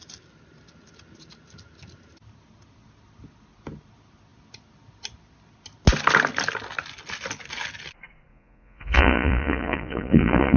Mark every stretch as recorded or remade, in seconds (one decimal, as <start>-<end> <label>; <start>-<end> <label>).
0.0-8.3 recorded; 8.3-10.6 remade